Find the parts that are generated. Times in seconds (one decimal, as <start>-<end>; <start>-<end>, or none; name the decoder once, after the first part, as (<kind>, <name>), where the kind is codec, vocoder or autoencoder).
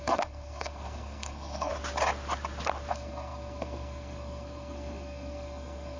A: 0.0-1.7 (codec, SNAC); 2.9-6.0